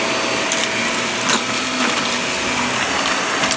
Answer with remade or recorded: recorded